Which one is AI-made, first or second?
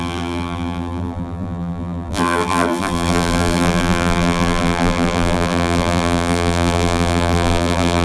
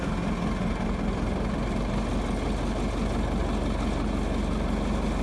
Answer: first